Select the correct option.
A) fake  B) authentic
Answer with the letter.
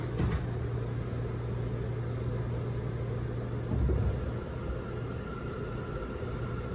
B